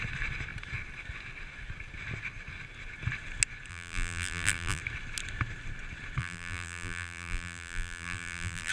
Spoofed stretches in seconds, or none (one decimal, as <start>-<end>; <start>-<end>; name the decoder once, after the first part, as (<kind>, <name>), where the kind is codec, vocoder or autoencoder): 3.7-4.8 (vocoder, BigVGAN v2); 6.2-8.7